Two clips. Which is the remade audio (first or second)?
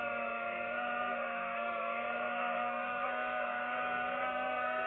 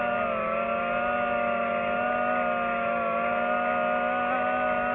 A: first